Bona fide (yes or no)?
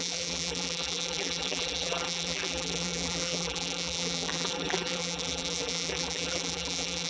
no